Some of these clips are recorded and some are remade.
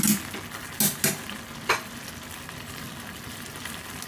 recorded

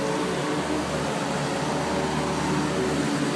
recorded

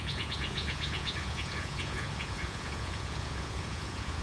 remade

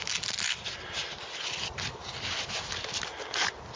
recorded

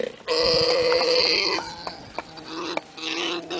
recorded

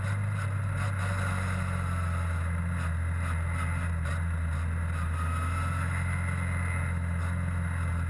recorded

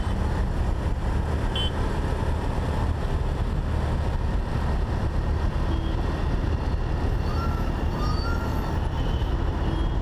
recorded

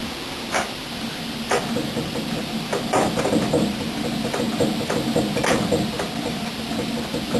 recorded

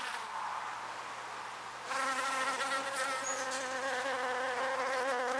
recorded